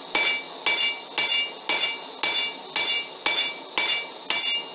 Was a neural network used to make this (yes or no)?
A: no